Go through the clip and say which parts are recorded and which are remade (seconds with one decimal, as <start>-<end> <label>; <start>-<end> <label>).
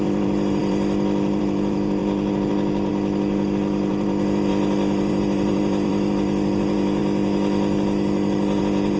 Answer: 0.0-2.9 remade; 2.9-3.9 recorded; 3.9-7.0 remade; 7.0-8.6 recorded; 8.6-9.0 remade